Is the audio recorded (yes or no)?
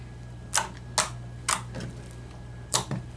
yes